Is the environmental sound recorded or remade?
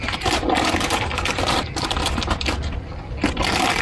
recorded